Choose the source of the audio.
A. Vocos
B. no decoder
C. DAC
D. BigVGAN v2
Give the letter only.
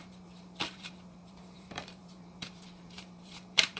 D